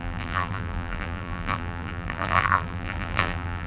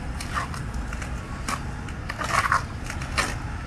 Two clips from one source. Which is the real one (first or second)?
second